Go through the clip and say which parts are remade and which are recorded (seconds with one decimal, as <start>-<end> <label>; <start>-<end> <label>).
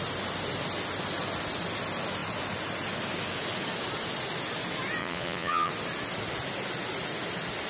0.0-5.0 recorded; 5.0-5.7 remade; 5.7-7.7 recorded